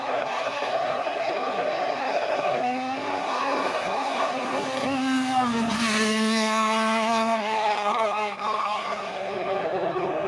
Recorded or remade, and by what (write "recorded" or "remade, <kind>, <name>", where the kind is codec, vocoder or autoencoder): remade, codec, SNAC